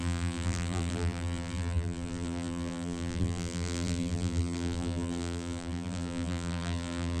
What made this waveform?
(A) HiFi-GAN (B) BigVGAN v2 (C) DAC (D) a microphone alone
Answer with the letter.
B